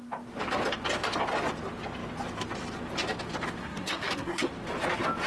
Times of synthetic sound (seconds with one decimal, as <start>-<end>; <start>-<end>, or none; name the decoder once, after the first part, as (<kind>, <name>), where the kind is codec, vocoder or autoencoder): 3.6-4.5 (codec, SNAC)

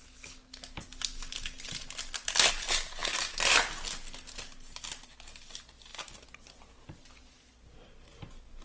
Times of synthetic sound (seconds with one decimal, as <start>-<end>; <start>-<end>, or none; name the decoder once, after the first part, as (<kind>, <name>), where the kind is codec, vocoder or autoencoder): none

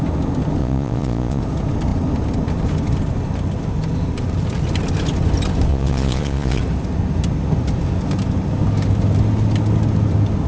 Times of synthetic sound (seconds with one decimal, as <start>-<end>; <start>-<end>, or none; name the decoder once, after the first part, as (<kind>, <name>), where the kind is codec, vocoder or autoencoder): 0.6-1.4 (vocoder, Vocos); 5.7-6.6

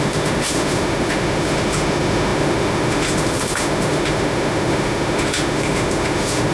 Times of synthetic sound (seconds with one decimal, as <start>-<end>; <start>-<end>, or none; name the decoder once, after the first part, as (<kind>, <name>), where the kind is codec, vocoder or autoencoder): 0.0-6.5 (autoencoder, DAC-VAE)

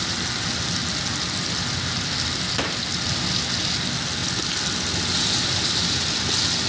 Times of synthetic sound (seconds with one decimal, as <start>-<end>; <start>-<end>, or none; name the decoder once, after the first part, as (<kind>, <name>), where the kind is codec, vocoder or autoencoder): none

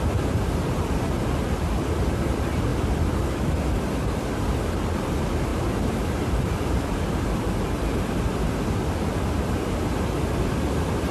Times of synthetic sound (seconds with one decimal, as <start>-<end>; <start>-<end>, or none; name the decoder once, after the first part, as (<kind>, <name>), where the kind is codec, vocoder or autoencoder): 5.5-8.9 (vocoder, BigVGAN v2)

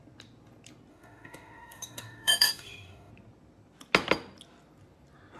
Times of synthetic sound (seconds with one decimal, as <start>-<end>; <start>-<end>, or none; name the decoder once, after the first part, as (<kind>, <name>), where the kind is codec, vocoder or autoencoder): 0.9-3.1 (autoencoder, DAC-VAE)

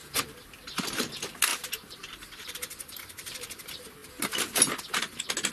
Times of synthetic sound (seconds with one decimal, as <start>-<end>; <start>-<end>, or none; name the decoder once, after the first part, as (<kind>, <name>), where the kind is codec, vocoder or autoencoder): 1.5-3.1 (vocoder, BigVGAN v2)